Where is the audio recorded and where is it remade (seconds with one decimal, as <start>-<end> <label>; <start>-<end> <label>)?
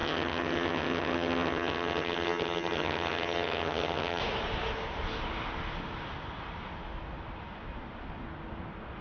0.0-4.2 remade; 4.2-9.0 recorded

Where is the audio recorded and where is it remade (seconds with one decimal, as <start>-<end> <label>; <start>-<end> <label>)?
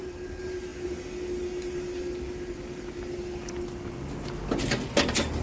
0.0-5.4 recorded